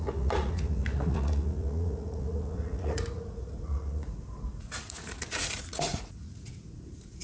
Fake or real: fake